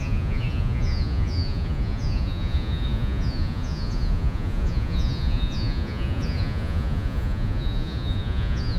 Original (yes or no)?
no